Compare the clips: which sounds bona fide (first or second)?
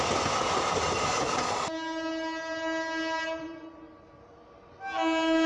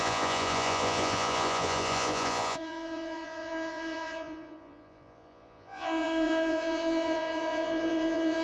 first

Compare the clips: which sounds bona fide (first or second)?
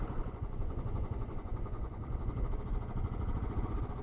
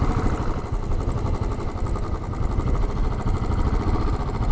second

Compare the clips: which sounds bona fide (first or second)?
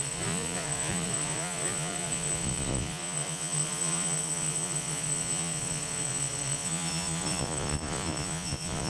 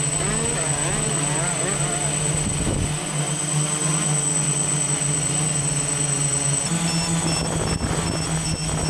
second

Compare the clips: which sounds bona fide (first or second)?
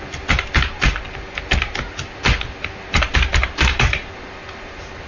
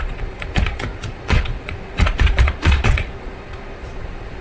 first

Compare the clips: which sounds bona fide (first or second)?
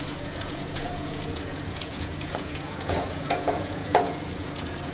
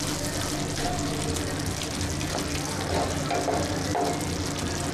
second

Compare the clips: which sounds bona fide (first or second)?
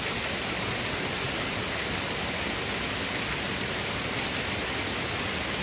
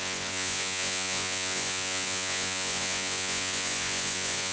first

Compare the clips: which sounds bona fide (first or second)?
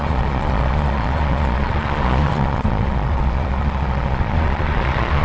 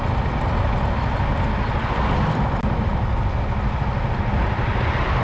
second